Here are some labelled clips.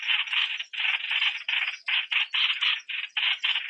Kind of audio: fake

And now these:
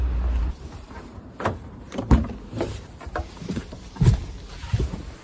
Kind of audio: fake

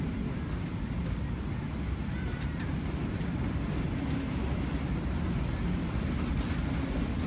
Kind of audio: real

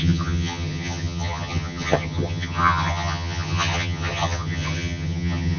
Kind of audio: fake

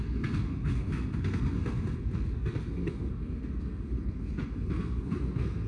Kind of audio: fake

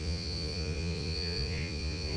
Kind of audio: fake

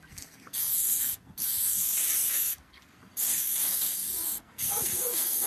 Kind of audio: fake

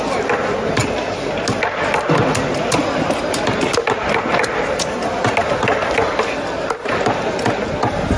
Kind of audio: real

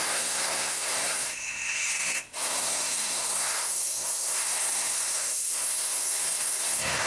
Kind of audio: fake